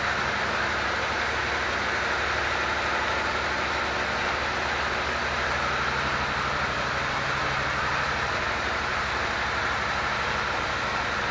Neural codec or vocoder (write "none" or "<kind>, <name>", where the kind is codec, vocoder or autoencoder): vocoder, BigVGAN v2